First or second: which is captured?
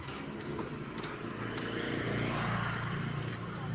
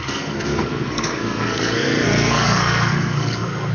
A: first